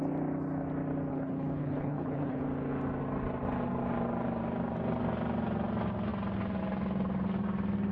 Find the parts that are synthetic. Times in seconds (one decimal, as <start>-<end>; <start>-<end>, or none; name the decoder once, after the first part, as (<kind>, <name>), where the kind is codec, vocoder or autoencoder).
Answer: 1.1-2.4 (codec, HILCodec)